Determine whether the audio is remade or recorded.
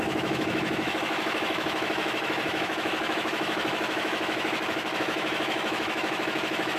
remade